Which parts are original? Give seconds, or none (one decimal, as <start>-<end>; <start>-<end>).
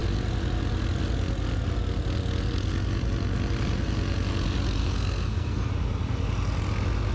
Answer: 0.0-4.8; 5.7-7.1